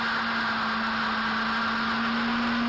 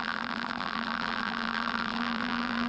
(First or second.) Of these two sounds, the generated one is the second